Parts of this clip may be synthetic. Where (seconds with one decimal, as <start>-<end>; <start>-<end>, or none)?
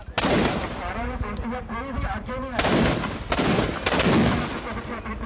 0.4-3.6